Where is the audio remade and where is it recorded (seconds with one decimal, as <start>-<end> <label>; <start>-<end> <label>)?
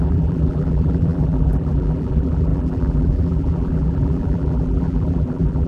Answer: 0.0-5.7 remade